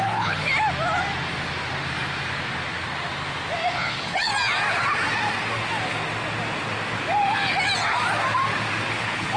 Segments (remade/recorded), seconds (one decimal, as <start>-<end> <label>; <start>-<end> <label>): 0.0-0.5 remade; 0.5-3.7 recorded; 3.7-4.3 remade; 4.3-9.0 recorded; 9.0-9.4 remade

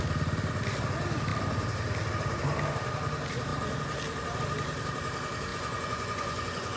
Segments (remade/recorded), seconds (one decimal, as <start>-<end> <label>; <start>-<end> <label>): 0.0-5.5 recorded; 5.5-6.8 remade

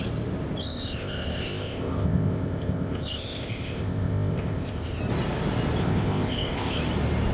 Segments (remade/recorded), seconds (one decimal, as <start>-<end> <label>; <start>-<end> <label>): 0.0-0.6 recorded; 0.6-5.0 remade; 5.0-5.8 recorded; 5.8-6.8 remade; 6.8-7.3 recorded